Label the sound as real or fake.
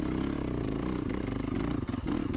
real